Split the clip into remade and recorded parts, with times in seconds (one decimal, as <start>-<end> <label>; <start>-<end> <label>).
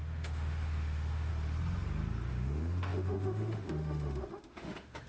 0.0-1.3 remade; 1.3-2.3 recorded; 2.3-5.1 remade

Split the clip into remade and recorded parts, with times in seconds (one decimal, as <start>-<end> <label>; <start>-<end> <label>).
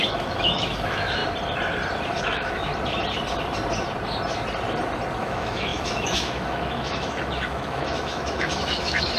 0.0-1.2 remade; 1.2-2.2 recorded; 2.2-2.7 remade; 2.7-5.2 recorded; 5.2-9.2 remade